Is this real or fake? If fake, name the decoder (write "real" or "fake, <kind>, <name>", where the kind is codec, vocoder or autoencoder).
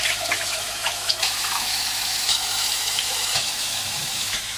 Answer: fake, autoencoder, DAC-VAE